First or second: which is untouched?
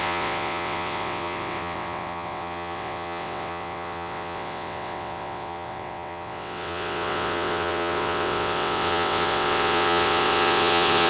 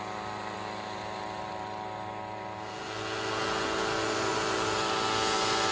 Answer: second